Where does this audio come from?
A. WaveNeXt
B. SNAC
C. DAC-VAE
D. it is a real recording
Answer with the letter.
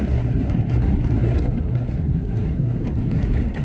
B